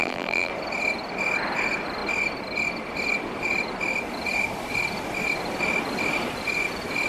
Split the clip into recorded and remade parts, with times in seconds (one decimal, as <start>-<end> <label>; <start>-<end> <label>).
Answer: 0.0-0.5 remade; 0.5-7.1 recorded